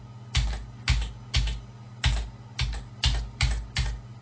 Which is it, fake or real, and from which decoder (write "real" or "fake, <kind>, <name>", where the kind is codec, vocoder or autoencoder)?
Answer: real